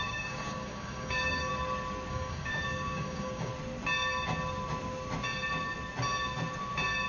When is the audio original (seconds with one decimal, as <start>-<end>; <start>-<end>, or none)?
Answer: 1.5-2.1; 3.5-7.1